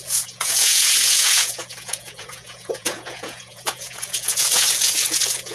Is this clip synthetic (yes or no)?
yes